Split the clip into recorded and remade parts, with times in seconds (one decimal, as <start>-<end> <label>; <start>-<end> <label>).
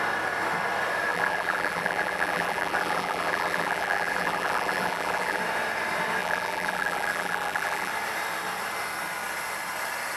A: 0.0-1.1 recorded; 1.1-5.4 remade; 5.4-6.2 recorded; 6.2-7.9 remade; 7.9-10.2 recorded